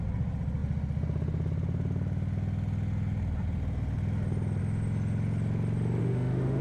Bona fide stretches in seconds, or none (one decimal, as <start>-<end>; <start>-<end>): 0.0-6.0